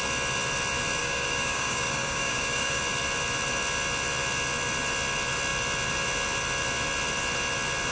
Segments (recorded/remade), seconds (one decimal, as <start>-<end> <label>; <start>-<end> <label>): 0.0-1.0 recorded; 1.0-2.8 remade; 2.8-7.9 recorded

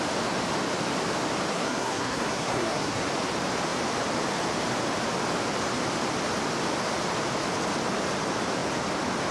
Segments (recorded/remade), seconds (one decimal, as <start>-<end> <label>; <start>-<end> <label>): 0.0-1.5 recorded; 1.5-3.1 remade; 3.1-9.3 recorded

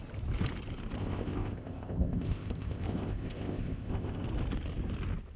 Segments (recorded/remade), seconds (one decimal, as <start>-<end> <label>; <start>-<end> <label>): 0.0-1.0 recorded; 1.0-4.2 remade; 4.2-5.4 recorded

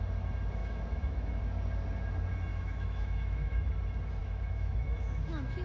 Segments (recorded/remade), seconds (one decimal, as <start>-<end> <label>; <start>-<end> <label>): 0.0-0.6 recorded; 0.6-1.4 remade; 1.4-2.5 recorded; 2.5-3.7 remade; 3.7-4.2 recorded; 4.2-5.6 remade

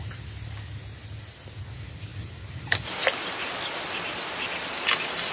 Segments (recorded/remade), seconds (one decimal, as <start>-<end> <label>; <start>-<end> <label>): 0.0-5.3 recorded